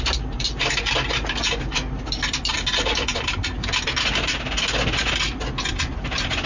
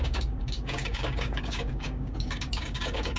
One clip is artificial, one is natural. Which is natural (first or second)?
first